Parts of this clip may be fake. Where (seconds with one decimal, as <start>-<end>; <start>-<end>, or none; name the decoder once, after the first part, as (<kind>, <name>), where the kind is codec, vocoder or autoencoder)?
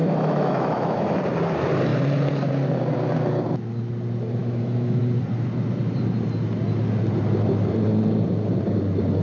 0.0-1.2 (autoencoder, DAC-VAE); 4.4-5.0